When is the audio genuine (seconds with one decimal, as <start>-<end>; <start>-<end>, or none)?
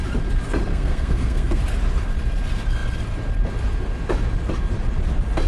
0.0-0.7; 1.6-5.5